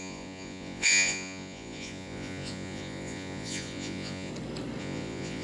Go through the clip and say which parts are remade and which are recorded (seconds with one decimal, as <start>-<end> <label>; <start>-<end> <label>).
0.0-4.3 remade; 4.3-4.8 recorded; 4.8-5.4 remade